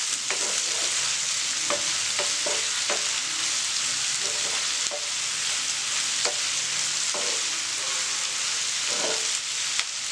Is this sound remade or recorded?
recorded